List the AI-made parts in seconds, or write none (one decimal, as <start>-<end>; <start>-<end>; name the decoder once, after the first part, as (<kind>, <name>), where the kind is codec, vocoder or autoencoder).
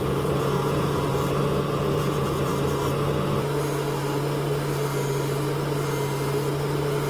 0.0-1.1 (vocoder, Vocos); 1.8-2.5